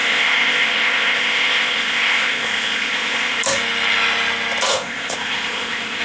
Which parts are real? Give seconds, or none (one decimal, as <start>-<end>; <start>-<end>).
3.4-4.7